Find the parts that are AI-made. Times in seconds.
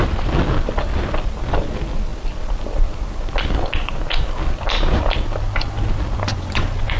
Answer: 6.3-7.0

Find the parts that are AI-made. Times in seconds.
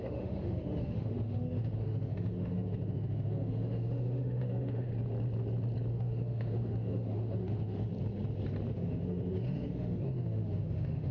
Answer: 0.0-4.9; 5.9-7.9; 8.7-11.1